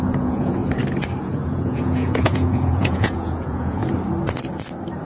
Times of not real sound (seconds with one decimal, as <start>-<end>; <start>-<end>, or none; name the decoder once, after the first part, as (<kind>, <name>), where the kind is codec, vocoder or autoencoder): 0.0-0.6 (vocoder, Vocos); 1.2-3.8